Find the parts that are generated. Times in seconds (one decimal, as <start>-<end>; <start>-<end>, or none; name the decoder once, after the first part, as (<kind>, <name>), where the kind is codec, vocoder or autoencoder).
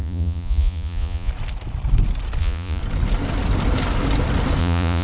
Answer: 0.0-1.3 (vocoder, Vocos); 2.4-2.8; 4.6-5.0